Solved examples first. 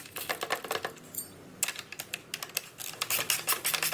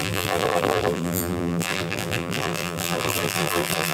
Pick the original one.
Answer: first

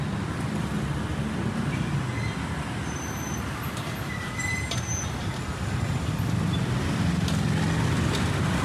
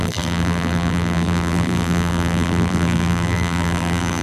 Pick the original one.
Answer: first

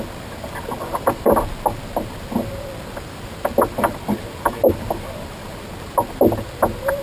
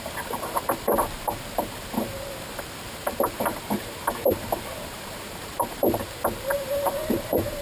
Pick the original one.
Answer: first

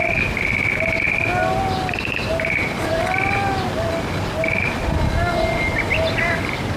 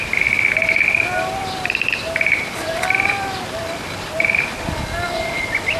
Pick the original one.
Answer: first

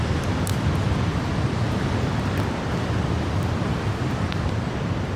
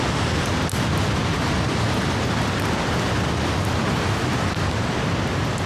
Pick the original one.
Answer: second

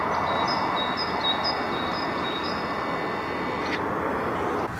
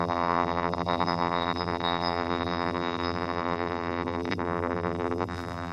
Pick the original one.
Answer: first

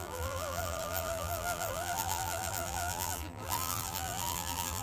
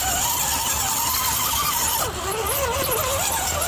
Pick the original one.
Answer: second